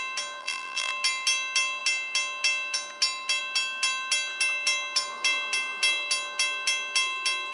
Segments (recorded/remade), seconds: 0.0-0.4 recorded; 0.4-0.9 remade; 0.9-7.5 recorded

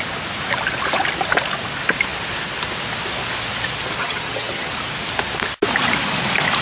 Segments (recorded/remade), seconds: 0.0-4.0 recorded; 4.0-4.7 remade; 4.7-6.6 recorded

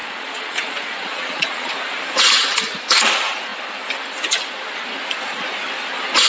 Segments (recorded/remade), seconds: 0.0-1.7 remade; 1.7-6.3 recorded

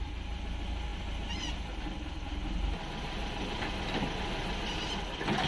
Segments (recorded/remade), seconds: 0.0-5.5 recorded

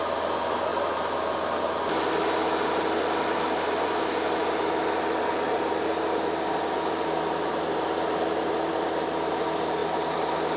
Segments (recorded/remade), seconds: 0.0-10.6 recorded

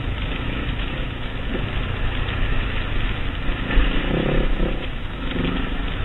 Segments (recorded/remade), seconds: 0.0-1.3 remade; 1.3-4.1 recorded; 4.1-6.0 remade

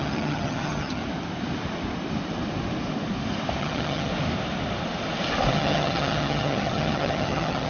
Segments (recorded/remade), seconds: 0.0-1.0 remade; 1.0-3.6 recorded; 3.6-4.1 remade; 4.1-5.5 recorded; 5.5-7.7 remade

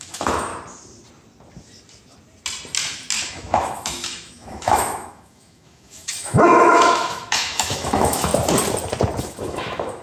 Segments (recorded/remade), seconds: 0.0-0.5 remade; 0.5-3.3 recorded; 3.3-8.3 remade; 8.3-9.2 recorded; 9.2-10.0 remade